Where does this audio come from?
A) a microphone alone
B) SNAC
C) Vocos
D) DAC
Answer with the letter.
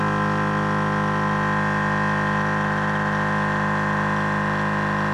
A